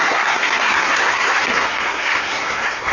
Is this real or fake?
fake